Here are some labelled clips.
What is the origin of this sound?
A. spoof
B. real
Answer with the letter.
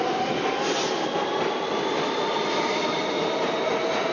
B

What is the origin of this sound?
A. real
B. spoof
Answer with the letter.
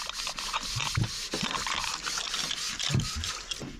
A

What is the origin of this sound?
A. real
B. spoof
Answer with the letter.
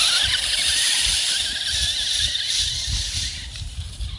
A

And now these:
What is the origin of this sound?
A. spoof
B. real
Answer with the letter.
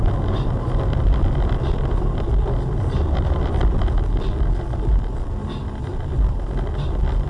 A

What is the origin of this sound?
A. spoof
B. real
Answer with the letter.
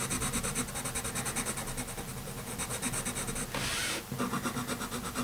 B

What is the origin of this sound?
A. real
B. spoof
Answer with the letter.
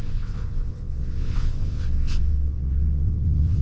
B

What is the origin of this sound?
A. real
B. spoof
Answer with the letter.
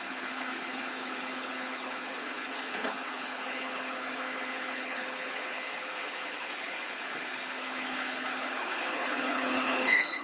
B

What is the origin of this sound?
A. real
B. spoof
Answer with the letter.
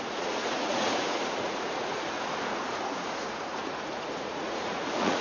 B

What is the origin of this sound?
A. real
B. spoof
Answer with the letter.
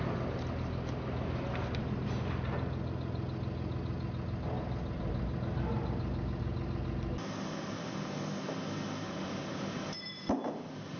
A